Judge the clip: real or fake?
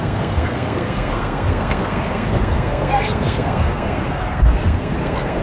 fake